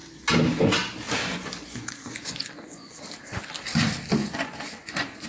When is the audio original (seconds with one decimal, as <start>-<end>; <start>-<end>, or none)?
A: 0.0-1.2; 3.0-4.2